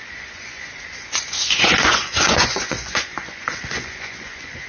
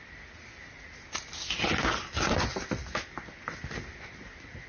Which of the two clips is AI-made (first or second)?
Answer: first